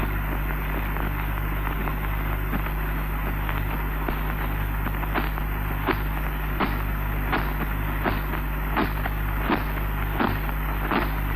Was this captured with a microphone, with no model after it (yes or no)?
yes